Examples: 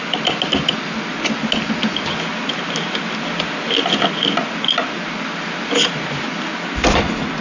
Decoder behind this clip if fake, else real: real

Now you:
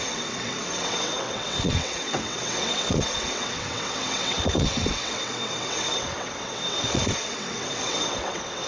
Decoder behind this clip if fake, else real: fake, vocoder, WaveNeXt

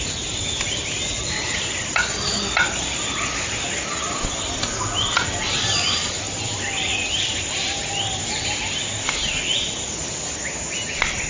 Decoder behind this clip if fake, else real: real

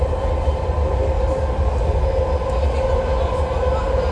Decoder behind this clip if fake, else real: real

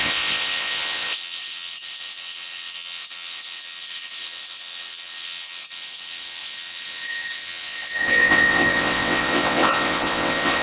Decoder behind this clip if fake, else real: fake, vocoder, WaveNeXt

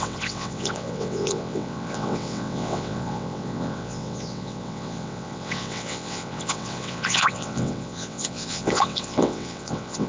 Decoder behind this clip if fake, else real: fake, vocoder, WaveNeXt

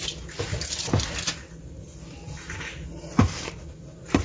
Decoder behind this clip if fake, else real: real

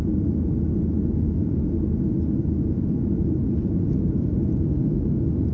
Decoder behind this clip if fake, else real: real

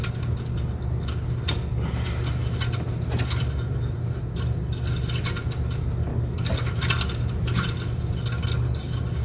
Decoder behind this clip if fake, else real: real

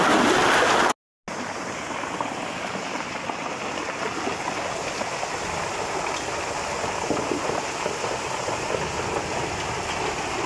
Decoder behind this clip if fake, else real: real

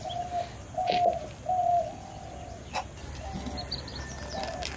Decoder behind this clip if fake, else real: real